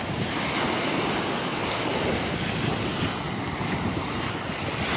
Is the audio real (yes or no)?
yes